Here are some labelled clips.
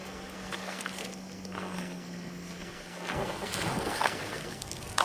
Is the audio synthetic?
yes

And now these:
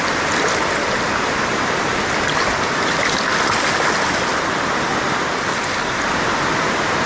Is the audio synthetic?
no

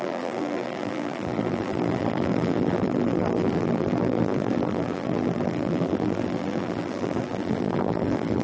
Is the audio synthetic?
yes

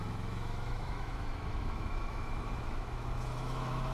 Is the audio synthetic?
yes